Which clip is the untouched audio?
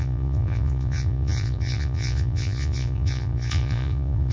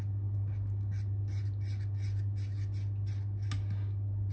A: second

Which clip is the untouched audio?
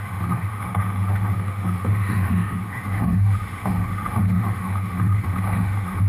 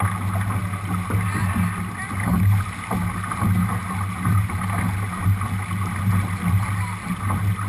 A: second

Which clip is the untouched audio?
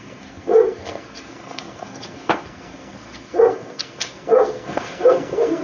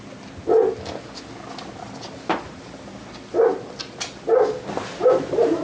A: second